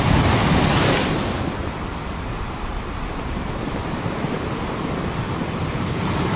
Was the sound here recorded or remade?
recorded